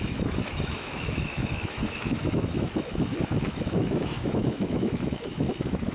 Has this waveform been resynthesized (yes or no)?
yes